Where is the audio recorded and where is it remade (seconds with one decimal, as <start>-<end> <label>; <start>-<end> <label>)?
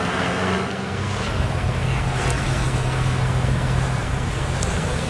0.0-5.1 remade